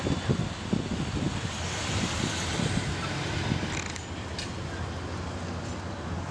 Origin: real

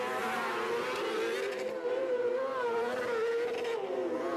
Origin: real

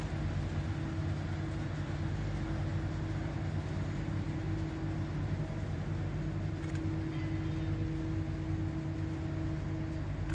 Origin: real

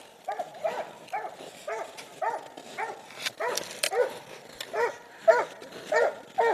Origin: real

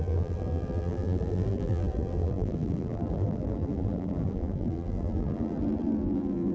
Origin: fake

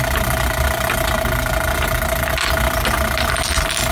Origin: real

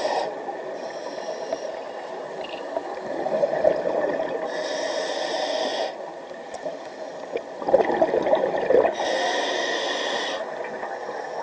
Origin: real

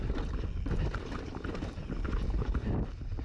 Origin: real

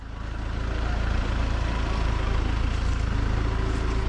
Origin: fake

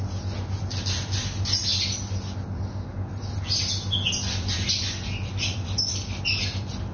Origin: real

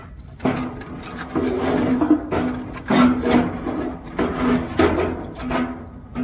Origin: real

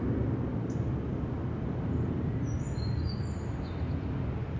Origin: real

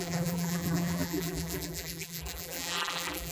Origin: fake